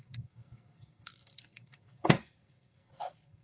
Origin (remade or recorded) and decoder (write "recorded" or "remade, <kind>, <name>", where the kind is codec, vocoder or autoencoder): remade, codec, SNAC